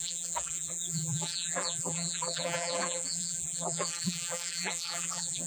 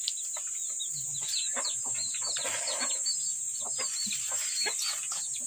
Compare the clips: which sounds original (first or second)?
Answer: second